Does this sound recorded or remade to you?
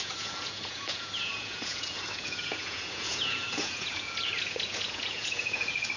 remade